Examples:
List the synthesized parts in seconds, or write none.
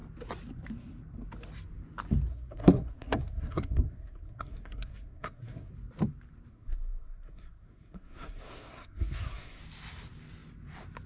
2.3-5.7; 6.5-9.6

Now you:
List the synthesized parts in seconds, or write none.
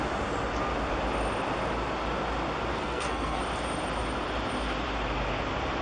2.7-3.4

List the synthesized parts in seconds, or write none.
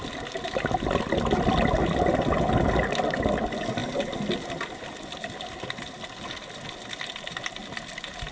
none